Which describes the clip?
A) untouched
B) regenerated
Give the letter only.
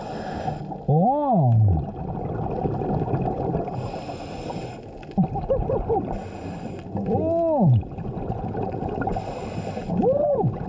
A